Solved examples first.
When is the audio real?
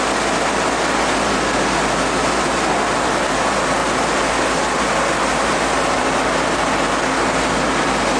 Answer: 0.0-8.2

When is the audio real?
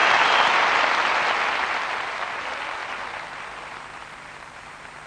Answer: 0.0-2.8; 3.4-4.0; 4.6-5.1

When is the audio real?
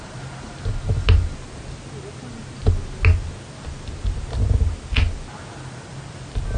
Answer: 0.0-6.6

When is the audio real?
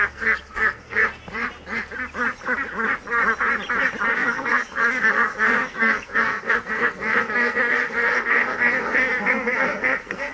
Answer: 1.0-4.1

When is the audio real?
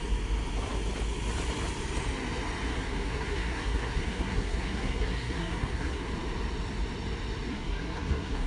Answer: 0.0-2.7; 6.1-7.5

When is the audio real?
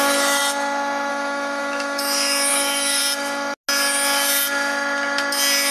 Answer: 0.4-1.1; 3.0-5.7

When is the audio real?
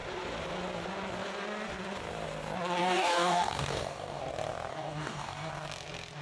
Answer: 0.0-2.8; 4.2-4.7; 5.5-6.2